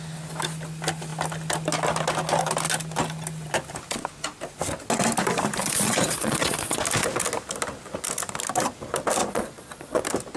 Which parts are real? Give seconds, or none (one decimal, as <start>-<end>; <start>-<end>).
0.0-5.6; 6.8-9.2; 10.0-10.4